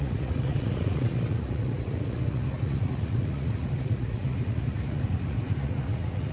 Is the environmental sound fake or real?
fake